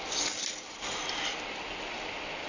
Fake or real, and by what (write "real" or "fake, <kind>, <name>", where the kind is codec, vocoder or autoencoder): real